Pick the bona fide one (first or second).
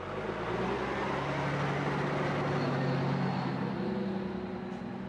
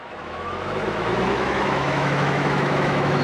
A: first